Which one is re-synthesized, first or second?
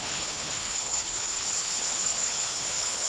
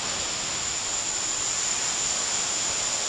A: first